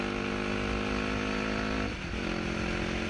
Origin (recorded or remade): recorded